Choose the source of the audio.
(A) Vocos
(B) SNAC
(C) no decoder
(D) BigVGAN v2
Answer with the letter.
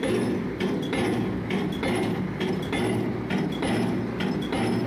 C